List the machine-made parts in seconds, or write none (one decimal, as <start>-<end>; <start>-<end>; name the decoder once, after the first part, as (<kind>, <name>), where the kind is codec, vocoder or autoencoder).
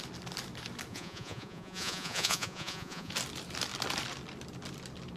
0.9-3.1 (vocoder, Vocos)